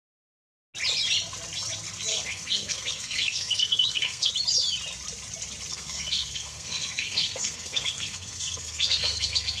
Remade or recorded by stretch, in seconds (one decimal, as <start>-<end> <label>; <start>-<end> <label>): 0.0-2.1 recorded; 2.1-4.3 remade; 4.3-5.7 recorded; 5.7-9.6 remade